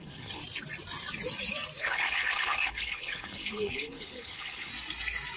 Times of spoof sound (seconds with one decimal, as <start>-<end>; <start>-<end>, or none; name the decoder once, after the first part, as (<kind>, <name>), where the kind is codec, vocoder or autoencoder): 0.0-0.4 (codec, HILCodec); 1.8-4.7